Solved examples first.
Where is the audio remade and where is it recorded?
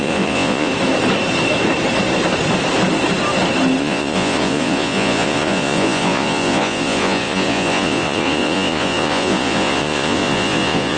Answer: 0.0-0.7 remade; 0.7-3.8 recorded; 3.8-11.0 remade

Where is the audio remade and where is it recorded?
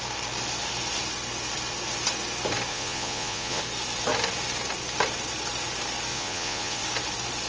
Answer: 0.0-2.7 recorded; 2.7-3.6 remade; 3.6-6.1 recorded; 6.1-6.8 remade; 6.8-7.5 recorded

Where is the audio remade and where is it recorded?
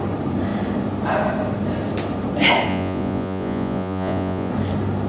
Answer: 0.0-2.7 recorded; 2.7-4.5 remade; 4.5-5.1 recorded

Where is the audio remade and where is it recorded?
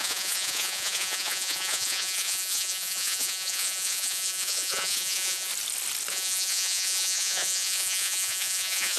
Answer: 0.0-5.5 remade; 5.5-6.1 recorded; 6.1-9.0 remade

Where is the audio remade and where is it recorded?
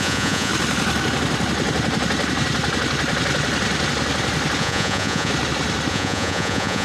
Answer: 0.0-0.5 remade; 0.5-4.6 recorded; 4.6-5.3 remade; 5.3-5.9 recorded; 5.9-6.8 remade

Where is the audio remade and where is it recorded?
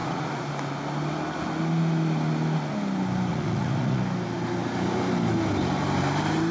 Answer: 0.0-0.5 remade; 0.5-3.3 recorded; 3.3-4.0 remade; 4.0-6.5 recorded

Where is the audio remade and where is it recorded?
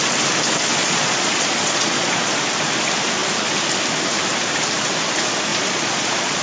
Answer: 0.0-0.8 recorded; 0.8-2.3 remade; 2.3-5.5 recorded; 5.5-6.4 remade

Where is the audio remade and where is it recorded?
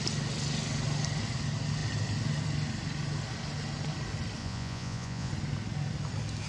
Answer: 0.0-4.4 recorded; 4.4-5.3 remade; 5.3-6.5 recorded